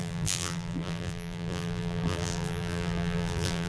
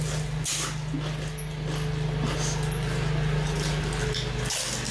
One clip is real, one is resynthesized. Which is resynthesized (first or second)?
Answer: first